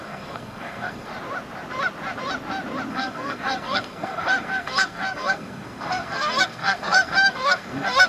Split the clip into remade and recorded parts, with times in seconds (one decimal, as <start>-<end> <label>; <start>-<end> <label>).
0.0-1.1 remade; 1.1-2.9 recorded; 2.9-8.1 remade